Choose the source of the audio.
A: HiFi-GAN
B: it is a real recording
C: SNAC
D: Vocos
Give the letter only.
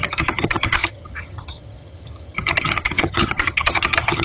A